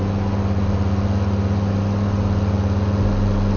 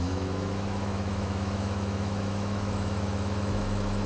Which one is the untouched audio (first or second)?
first